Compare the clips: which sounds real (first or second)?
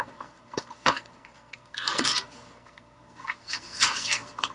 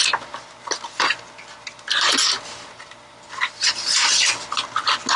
second